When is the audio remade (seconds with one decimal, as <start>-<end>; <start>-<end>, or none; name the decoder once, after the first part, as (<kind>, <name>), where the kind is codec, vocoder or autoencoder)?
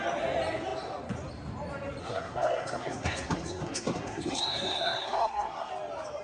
2.0-5.7 (codec, SNAC)